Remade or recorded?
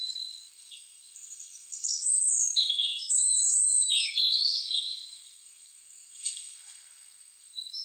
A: remade